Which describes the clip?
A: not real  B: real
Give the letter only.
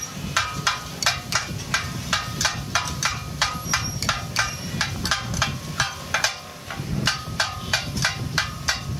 A